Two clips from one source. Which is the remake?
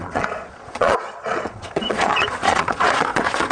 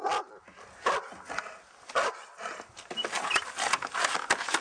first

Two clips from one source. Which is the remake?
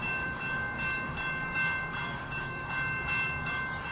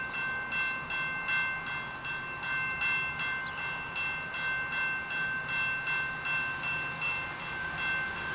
first